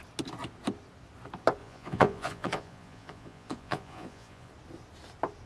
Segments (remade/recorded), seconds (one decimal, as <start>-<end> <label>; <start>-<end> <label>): 0.0-1.6 recorded; 1.6-4.5 remade; 4.5-5.5 recorded